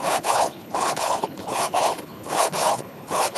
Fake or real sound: fake